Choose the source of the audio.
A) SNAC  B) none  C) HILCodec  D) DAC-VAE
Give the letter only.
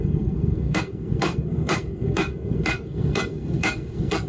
A